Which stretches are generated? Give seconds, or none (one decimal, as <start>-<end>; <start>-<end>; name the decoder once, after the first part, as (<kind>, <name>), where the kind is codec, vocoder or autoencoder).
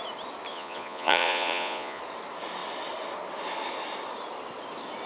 0.5-2.0 (vocoder, Vocos)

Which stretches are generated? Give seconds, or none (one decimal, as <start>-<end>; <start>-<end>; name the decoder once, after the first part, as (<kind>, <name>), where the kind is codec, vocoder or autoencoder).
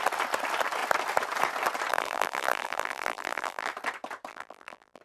1.9-3.7 (vocoder, BigVGAN v2); 4.3-5.0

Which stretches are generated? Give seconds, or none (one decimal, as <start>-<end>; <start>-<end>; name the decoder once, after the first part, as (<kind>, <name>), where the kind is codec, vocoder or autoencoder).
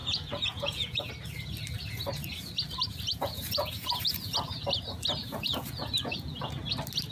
0.0-1.1 (vocoder, Vocos); 3.1-4.3; 5.2-6.6